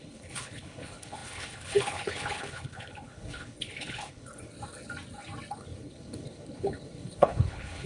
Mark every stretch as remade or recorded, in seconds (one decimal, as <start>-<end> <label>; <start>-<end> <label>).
0.0-4.5 remade; 4.5-5.5 recorded; 5.5-7.9 remade